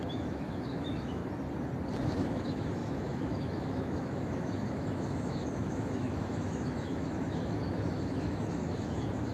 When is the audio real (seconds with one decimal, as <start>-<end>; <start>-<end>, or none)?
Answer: 1.2-1.9